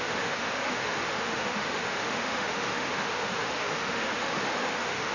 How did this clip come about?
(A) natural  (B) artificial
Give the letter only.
B